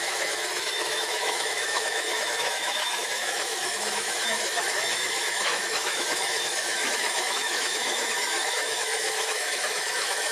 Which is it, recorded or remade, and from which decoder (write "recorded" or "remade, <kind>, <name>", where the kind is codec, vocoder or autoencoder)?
remade, autoencoder, DAC-VAE